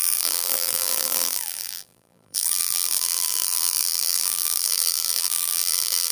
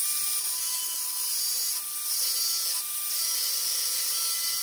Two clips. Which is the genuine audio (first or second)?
second